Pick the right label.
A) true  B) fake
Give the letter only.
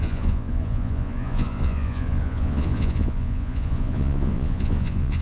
B